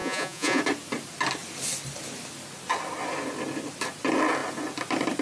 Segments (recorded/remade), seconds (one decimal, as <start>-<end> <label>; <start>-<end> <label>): 0.0-0.6 remade; 0.6-5.2 recorded